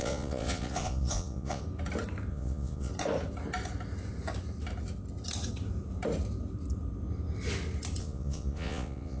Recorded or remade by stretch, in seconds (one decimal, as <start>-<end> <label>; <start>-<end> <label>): 0.0-1.6 remade; 1.6-2.3 recorded; 2.3-2.9 remade; 2.9-8.0 recorded; 8.0-9.2 remade